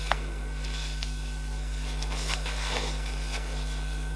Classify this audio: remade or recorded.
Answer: remade